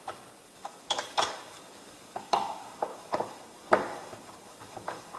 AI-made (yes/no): yes